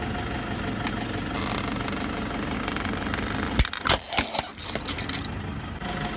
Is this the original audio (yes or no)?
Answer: yes